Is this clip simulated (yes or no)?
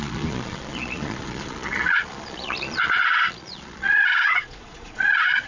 yes